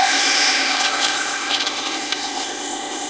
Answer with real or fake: fake